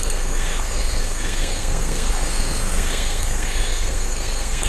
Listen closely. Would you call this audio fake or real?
fake